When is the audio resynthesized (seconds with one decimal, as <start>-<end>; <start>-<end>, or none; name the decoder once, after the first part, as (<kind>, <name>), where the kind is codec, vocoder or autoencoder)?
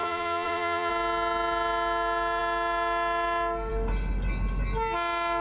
0.0-0.9 (vocoder, Vocos)